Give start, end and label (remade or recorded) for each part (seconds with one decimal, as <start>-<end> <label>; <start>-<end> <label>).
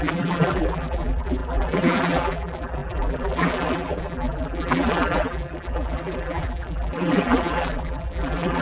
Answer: 0.0-8.6 remade